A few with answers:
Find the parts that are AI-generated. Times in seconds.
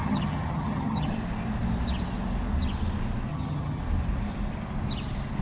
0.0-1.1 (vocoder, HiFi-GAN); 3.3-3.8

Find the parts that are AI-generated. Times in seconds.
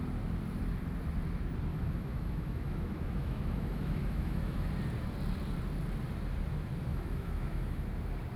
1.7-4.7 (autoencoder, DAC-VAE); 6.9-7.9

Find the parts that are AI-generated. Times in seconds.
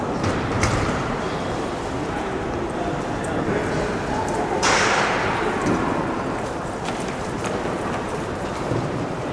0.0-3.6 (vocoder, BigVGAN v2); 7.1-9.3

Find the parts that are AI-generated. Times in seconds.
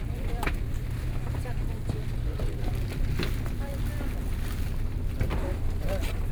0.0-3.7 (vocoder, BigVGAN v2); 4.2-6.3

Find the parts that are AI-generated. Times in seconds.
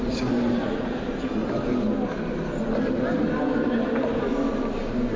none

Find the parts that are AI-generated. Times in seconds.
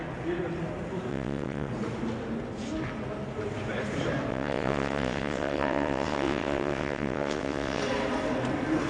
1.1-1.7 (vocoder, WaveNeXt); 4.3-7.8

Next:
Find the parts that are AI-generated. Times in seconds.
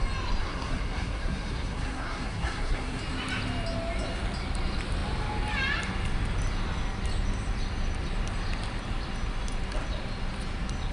0.4-3.0 (codec, SNAC)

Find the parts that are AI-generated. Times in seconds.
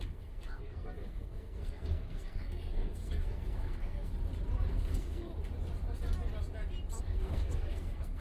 0.0-4.1 (codec, SNAC); 4.7-5.3; 7.0-8.2